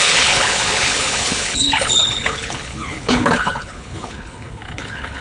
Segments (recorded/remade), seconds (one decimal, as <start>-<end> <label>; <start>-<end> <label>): 0.0-5.2 remade